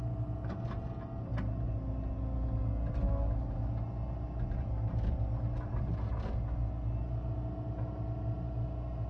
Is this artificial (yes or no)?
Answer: no